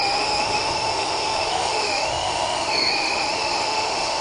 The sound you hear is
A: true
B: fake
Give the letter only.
B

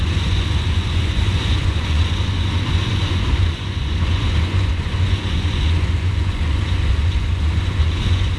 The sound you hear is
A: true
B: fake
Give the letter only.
B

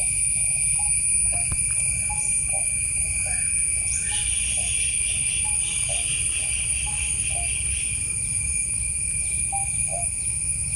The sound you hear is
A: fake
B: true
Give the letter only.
B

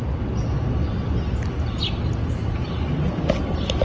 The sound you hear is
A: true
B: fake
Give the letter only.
A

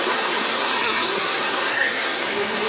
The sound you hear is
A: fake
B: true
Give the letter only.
A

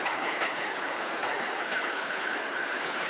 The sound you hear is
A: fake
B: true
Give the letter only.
A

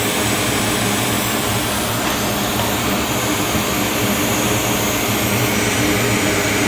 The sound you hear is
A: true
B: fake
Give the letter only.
A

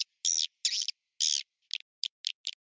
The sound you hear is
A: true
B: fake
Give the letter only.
A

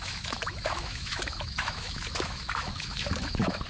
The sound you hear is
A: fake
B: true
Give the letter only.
A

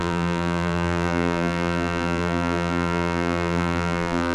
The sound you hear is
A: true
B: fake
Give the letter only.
B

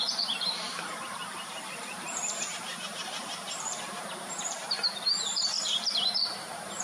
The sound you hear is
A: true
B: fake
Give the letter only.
B